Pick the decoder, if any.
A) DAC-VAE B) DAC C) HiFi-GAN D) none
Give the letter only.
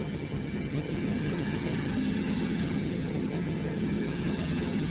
C